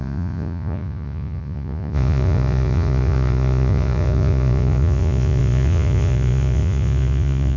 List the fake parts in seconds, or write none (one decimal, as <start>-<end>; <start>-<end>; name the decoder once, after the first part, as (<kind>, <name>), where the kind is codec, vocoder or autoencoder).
0.0-7.6 (vocoder, Vocos)